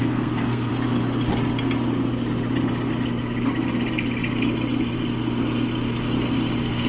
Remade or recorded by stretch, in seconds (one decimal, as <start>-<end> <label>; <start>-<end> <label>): 0.0-0.7 remade; 0.7-6.9 recorded